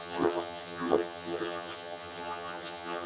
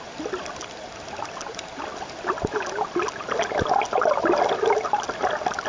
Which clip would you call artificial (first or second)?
first